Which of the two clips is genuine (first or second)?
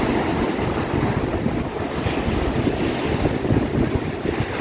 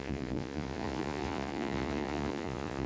first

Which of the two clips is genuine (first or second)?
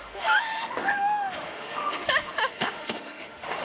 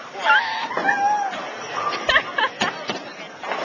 second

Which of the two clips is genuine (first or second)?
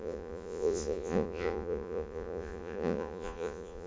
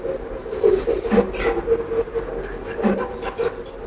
second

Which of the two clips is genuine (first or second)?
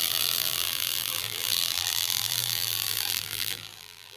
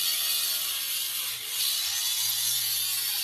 second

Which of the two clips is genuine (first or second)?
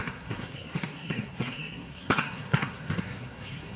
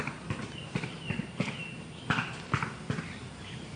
second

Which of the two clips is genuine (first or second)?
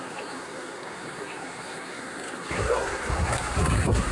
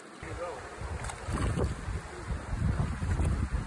second